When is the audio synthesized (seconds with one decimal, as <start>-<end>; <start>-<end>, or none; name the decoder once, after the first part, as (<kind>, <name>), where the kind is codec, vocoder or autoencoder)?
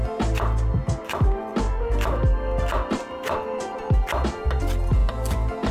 none